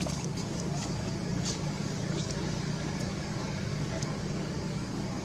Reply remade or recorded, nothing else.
remade